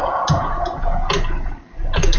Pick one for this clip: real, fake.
real